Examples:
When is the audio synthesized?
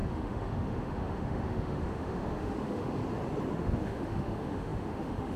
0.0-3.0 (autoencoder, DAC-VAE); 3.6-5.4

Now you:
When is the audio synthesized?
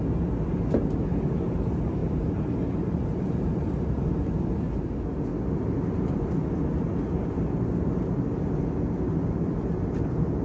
2.0-4.1 (vocoder, BigVGAN v2)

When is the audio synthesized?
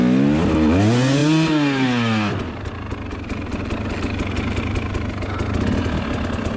none